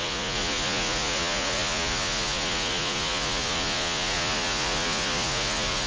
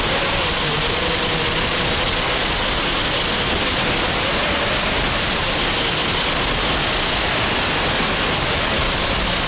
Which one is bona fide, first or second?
second